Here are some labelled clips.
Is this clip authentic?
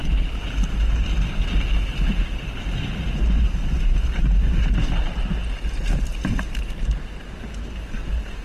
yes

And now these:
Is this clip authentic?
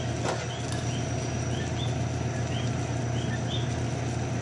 yes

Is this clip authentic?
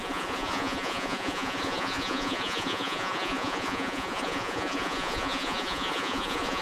no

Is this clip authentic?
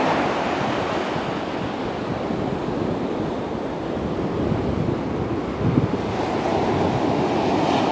yes